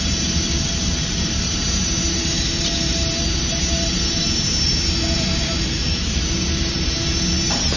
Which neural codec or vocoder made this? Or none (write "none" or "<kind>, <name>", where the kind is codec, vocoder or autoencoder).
vocoder, BigVGAN v2